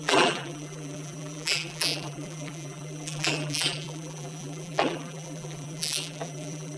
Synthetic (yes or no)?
yes